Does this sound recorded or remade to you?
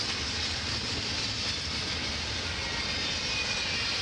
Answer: recorded